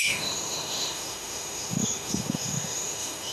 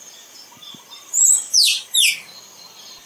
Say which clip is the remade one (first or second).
first